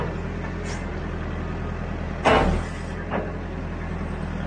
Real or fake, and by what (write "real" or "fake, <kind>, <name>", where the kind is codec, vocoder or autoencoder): real